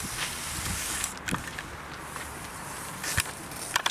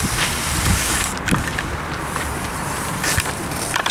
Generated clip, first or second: second